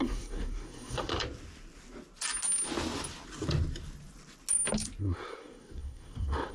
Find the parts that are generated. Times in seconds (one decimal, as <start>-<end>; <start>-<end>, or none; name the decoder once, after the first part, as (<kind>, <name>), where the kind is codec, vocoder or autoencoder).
0.0-1.1 (codec, SNAC); 5.0-6.5